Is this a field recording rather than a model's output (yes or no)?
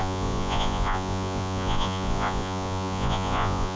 no